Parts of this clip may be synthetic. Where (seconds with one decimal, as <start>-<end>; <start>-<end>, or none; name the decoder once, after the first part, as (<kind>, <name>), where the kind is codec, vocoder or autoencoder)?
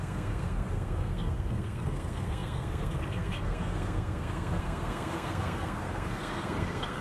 0.0-7.0 (codec, SNAC)